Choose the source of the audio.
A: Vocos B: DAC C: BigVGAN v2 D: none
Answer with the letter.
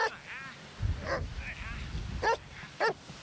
D